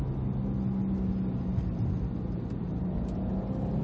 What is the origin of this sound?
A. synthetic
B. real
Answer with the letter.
B